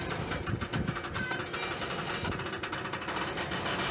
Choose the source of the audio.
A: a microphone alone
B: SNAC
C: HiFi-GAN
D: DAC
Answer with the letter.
A